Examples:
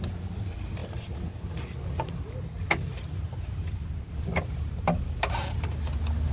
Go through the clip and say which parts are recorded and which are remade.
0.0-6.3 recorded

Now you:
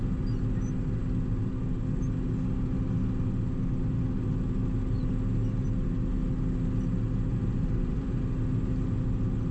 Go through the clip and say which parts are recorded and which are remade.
0.0-7.3 recorded; 7.3-8.2 remade; 8.2-9.5 recorded

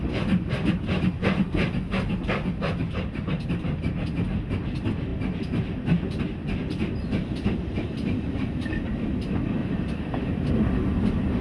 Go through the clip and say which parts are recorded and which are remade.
0.0-9.6 recorded; 9.6-10.5 remade; 10.5-11.4 recorded